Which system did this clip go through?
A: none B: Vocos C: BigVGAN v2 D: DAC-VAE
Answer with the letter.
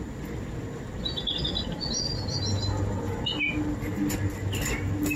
A